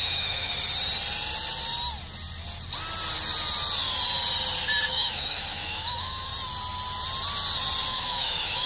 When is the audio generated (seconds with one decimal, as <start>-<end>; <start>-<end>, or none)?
0.0-0.5; 4.9-6.3; 7.9-8.7